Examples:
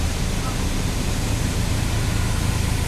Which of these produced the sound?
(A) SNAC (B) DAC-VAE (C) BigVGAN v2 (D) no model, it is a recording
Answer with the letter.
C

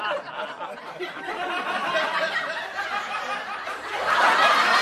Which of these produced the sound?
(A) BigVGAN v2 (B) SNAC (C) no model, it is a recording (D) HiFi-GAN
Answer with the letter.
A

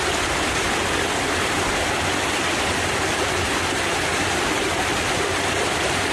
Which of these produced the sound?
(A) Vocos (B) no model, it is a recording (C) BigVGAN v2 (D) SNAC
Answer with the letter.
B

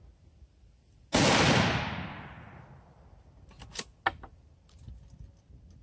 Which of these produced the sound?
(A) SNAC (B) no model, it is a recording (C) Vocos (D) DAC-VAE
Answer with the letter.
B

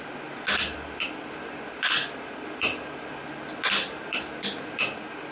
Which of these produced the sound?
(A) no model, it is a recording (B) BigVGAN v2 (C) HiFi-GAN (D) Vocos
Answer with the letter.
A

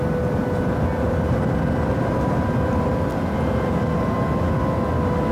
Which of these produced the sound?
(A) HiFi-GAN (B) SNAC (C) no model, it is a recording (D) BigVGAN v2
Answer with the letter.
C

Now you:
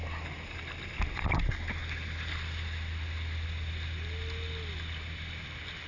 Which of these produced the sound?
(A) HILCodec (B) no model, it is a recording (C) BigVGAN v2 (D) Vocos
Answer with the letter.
B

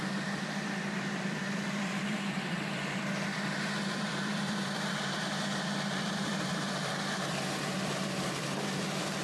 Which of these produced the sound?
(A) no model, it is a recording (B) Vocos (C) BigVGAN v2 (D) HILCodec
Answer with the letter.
C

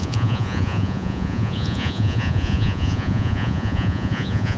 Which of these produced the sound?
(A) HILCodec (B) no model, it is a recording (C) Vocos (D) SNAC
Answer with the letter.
C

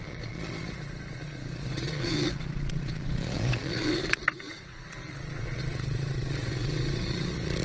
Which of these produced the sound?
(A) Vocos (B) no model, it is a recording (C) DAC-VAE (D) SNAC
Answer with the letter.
A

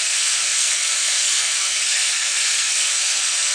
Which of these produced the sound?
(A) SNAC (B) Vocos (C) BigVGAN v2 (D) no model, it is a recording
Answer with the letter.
A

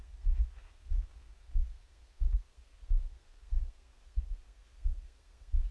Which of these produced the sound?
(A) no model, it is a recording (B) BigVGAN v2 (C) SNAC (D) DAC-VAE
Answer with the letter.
C